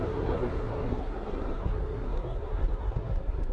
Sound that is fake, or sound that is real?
fake